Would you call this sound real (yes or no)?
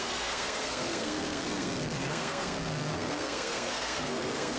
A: no